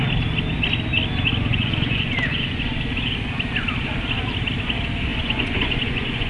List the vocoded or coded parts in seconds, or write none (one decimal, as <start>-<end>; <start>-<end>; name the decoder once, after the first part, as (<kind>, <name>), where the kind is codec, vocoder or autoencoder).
1.5-2.7 (vocoder, Vocos); 5.1-6.3